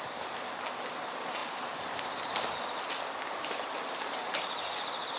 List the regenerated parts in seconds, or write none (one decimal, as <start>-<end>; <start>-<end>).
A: none